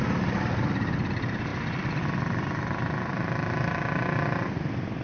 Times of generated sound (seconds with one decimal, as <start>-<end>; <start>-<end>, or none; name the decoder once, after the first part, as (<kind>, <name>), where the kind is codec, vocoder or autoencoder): none